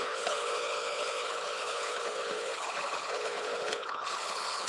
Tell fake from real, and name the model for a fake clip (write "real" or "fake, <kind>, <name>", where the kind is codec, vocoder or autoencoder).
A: fake, codec, HILCodec